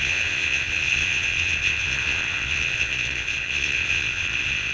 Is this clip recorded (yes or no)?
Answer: no